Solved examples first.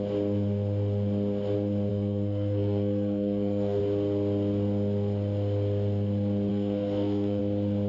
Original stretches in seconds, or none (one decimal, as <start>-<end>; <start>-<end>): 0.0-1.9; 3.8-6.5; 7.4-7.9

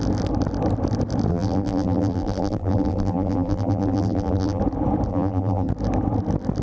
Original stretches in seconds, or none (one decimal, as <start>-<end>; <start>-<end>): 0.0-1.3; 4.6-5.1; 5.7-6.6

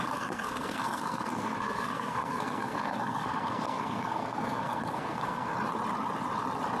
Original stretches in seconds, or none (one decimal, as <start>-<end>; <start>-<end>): 5.5-6.8

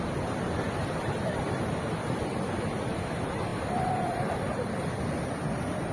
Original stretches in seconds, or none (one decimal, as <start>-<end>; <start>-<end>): 0.0-0.8; 1.4-3.5; 4.9-5.9

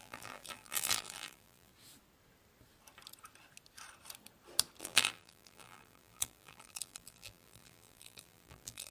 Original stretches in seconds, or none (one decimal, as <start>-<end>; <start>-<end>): 1.7-4.8

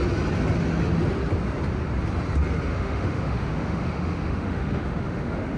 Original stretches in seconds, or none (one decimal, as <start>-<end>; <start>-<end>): 0.0-2.7

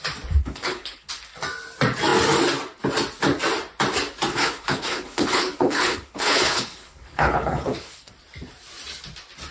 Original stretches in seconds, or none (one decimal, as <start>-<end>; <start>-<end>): 0.0-0.4; 1.1-4.3; 8.1-9.5